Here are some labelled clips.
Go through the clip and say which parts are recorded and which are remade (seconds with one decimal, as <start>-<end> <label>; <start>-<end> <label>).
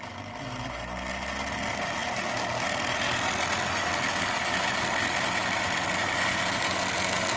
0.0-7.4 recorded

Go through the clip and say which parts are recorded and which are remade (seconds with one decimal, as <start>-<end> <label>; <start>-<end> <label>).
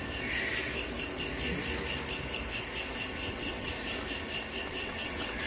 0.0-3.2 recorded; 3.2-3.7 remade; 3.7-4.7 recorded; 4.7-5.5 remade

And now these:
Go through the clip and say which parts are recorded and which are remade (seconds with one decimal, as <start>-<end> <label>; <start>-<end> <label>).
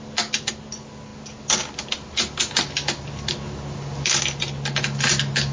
0.0-5.5 recorded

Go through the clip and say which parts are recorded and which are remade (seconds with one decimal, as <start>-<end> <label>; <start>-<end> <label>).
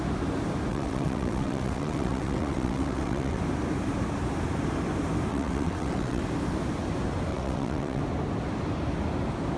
0.0-0.7 recorded; 0.7-3.4 remade; 3.4-5.3 recorded; 5.3-6.2 remade; 6.2-7.3 recorded; 7.3-8.0 remade; 8.0-9.6 recorded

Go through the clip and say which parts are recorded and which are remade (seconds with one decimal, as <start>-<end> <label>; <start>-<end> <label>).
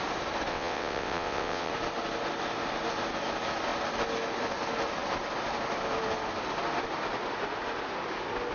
0.0-0.5 recorded; 0.5-1.7 remade; 1.7-8.5 recorded